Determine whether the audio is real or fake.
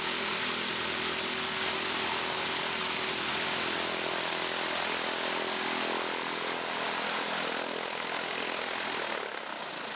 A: real